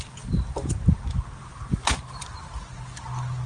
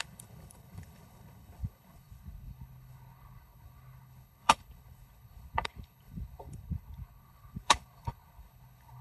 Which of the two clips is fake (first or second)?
second